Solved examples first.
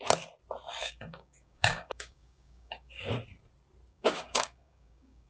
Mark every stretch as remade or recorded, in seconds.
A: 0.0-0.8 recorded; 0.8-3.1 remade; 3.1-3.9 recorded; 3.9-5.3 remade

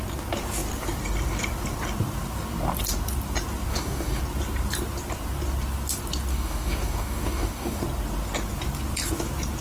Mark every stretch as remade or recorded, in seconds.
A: 0.0-3.7 recorded; 3.7-4.2 remade; 4.2-6.3 recorded; 6.3-7.8 remade; 7.8-9.6 recorded

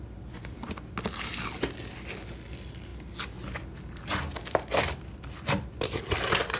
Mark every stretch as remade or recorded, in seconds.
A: 0.0-6.6 recorded

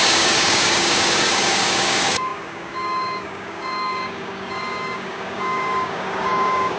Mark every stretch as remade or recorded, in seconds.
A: 0.0-6.8 remade

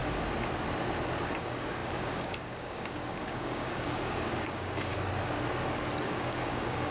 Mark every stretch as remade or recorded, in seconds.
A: 0.0-1.4 recorded; 1.4-4.9 remade; 4.9-6.0 recorded; 6.0-6.9 remade